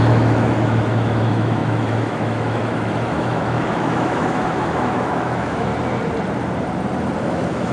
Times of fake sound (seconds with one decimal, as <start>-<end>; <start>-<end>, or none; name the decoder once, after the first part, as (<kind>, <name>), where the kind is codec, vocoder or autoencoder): 0.0-5.7 (autoencoder, DAC-VAE); 7.2-7.7